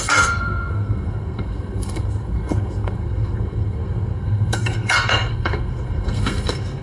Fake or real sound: fake